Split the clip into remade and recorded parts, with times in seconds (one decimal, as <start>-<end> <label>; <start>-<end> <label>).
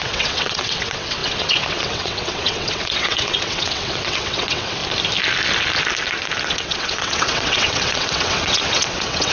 0.0-4.8 remade; 4.8-6.5 recorded; 6.5-9.3 remade